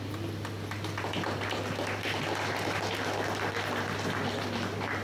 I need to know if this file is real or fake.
real